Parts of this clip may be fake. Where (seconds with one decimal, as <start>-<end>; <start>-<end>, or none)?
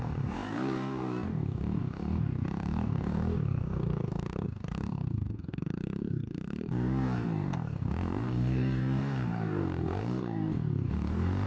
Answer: 0.0-11.5